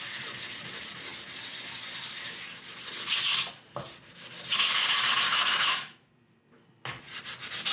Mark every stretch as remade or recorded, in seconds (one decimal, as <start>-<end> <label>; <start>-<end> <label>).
0.0-5.3 recorded; 5.3-6.1 remade; 6.1-7.7 recorded